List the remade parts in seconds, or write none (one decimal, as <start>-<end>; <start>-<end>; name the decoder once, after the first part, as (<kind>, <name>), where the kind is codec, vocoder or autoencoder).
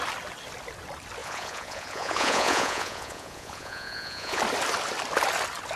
1.2-4.4 (vocoder, Vocos)